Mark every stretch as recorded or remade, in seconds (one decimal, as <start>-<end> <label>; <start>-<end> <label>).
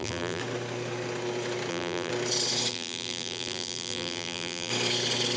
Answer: 0.0-0.4 remade; 0.4-1.7 recorded; 1.7-2.1 remade; 2.1-2.7 recorded; 2.7-4.7 remade; 4.7-5.4 recorded